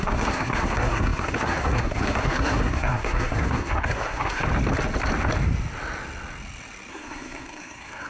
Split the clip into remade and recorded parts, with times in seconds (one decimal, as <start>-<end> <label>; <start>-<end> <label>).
0.0-4.4 remade; 4.4-6.9 recorded; 6.9-8.1 remade